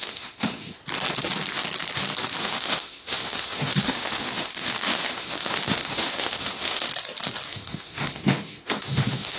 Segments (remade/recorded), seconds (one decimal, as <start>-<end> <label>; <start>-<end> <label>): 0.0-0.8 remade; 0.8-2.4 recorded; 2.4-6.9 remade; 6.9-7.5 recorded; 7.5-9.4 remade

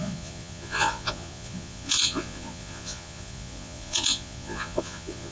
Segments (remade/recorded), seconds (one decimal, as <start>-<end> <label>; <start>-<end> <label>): 0.0-5.3 remade

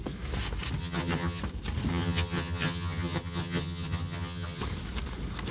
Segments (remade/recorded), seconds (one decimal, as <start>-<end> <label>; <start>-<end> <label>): 0.0-0.8 recorded; 0.8-1.4 remade; 1.4-1.9 recorded; 1.9-4.6 remade; 4.6-5.5 recorded

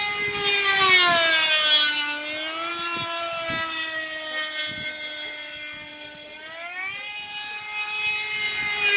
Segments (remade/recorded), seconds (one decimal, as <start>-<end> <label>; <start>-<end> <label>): 0.0-9.0 recorded

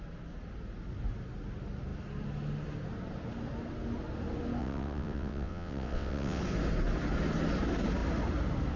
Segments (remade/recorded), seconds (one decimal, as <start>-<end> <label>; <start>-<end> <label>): 0.0-4.6 recorded; 4.6-6.4 remade; 6.4-8.8 recorded

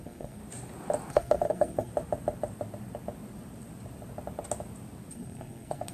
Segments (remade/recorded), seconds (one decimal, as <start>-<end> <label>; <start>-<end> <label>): 0.0-0.4 remade; 0.4-1.1 recorded; 1.1-1.9 remade; 1.9-5.1 recorded; 5.1-5.9 remade